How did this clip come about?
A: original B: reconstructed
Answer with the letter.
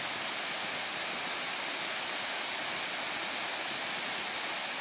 A